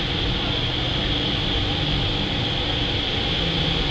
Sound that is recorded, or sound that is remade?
recorded